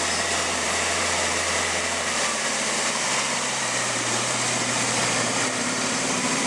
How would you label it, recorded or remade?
remade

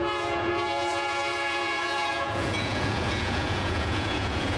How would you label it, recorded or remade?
remade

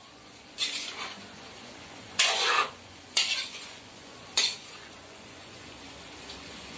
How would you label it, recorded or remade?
remade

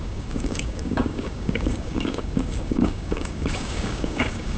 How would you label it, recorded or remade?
remade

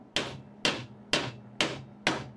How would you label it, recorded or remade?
recorded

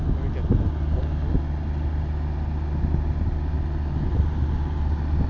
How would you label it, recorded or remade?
recorded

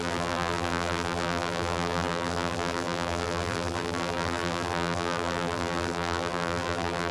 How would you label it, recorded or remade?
remade